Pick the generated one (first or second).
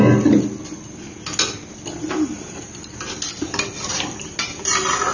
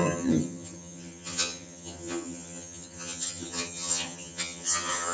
second